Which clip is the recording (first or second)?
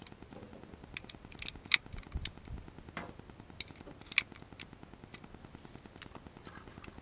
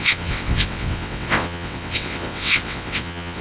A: first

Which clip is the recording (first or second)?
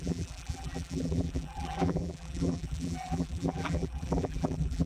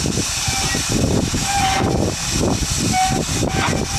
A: second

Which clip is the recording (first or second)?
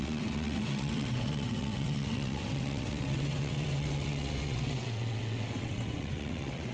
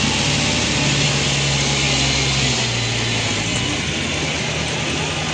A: second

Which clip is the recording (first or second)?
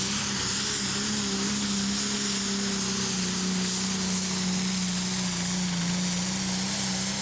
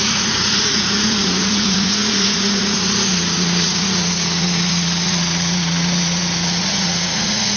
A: first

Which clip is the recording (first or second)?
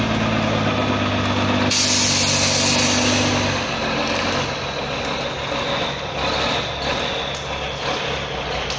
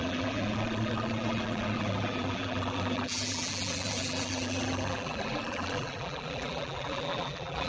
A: first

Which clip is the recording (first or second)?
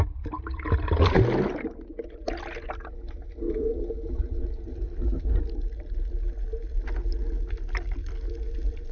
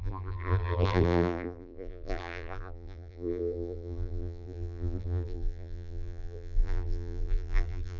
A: first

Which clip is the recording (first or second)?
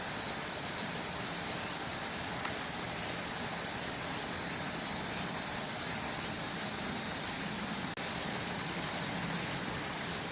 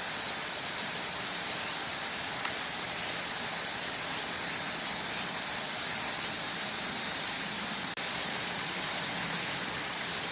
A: first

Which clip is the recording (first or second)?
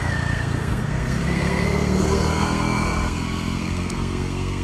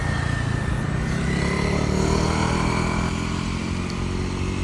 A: second